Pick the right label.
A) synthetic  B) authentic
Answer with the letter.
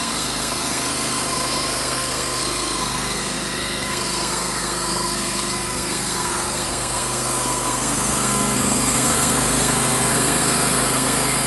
A